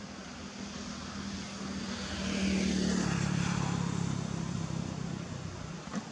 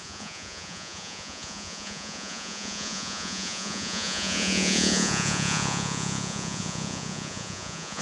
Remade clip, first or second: second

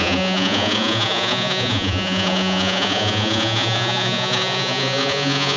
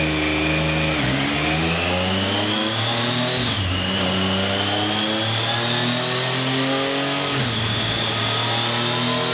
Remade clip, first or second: first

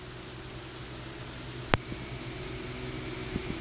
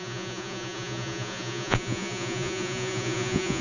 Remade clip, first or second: second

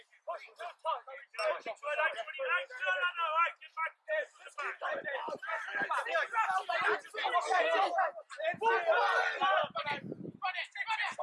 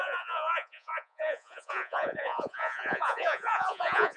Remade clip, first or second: second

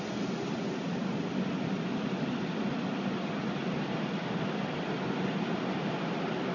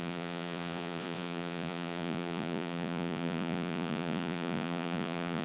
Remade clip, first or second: second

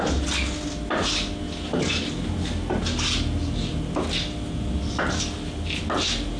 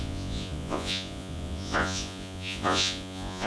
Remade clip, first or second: second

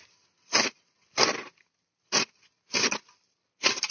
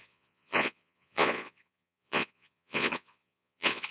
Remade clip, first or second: second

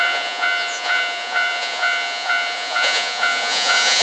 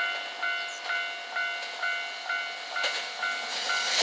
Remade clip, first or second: first